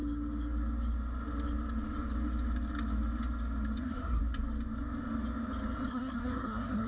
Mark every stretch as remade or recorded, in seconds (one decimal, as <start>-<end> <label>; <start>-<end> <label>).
0.0-3.8 recorded; 3.8-4.2 remade; 4.2-5.9 recorded; 5.9-6.9 remade